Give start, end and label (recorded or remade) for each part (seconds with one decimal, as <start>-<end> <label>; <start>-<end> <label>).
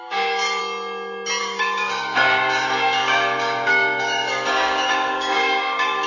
0.0-0.6 remade; 0.6-1.4 recorded; 1.4-6.1 remade